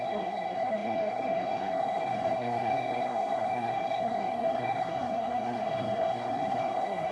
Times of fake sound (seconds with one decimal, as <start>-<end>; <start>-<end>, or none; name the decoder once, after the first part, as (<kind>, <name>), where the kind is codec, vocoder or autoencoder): 0.0-7.1 (codec, SNAC)